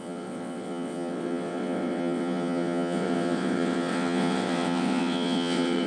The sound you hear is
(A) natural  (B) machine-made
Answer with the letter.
B